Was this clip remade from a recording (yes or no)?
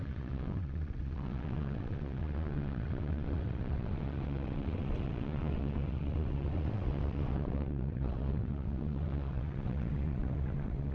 yes